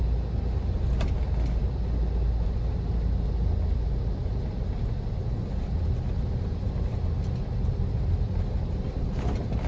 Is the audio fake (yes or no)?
no